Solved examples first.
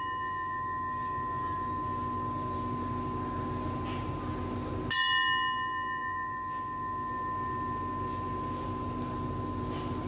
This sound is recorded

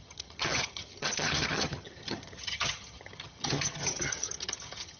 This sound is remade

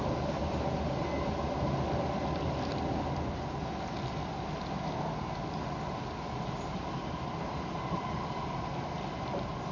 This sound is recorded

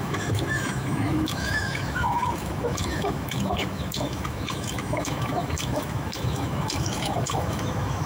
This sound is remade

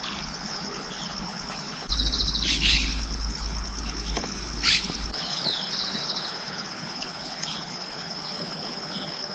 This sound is remade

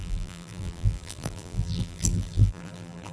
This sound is remade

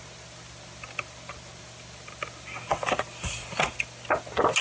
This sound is recorded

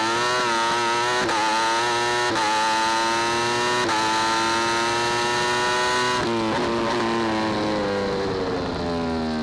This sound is recorded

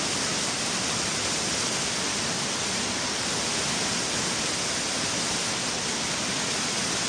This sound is recorded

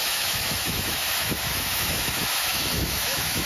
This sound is remade